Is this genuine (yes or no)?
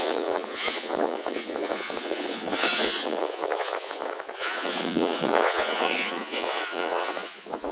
no